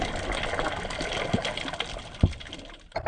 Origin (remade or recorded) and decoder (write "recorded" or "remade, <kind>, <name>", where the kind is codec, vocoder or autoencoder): recorded